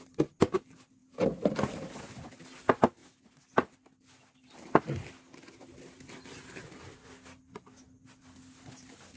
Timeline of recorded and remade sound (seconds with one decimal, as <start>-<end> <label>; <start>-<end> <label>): 0.0-9.2 recorded